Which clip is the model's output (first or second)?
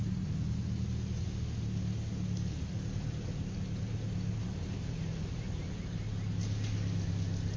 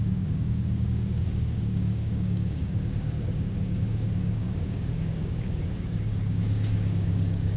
second